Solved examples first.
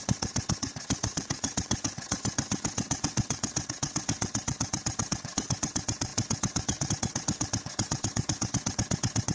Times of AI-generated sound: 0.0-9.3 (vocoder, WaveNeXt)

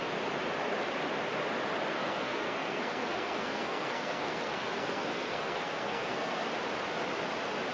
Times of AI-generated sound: 1.9-6.5 (codec, SNAC)

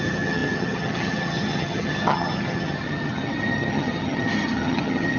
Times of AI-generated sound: 0.0-5.2 (vocoder, HiFi-GAN)